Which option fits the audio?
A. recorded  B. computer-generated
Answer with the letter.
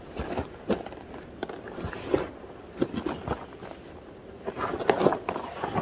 A